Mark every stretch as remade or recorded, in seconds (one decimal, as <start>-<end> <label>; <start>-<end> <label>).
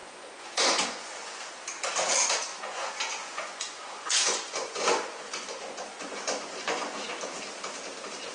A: 0.0-1.5 remade; 1.5-2.5 recorded; 2.5-7.1 remade; 7.1-8.3 recorded